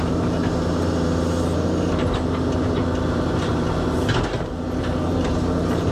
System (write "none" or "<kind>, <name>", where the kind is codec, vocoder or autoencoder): vocoder, BigVGAN v2